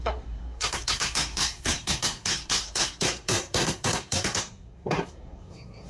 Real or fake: fake